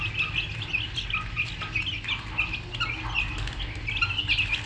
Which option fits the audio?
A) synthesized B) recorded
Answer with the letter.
B